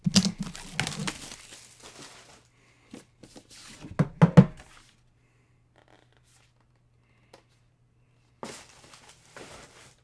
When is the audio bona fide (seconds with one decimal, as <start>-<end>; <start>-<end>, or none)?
0.0-10.0